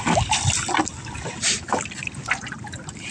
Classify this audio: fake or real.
real